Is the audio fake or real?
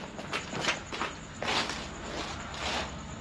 real